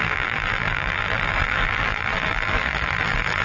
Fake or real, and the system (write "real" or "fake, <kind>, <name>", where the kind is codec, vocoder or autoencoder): fake, vocoder, BigVGAN v2